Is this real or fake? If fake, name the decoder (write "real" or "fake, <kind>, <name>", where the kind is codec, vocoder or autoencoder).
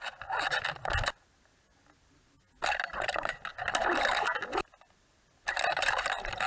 real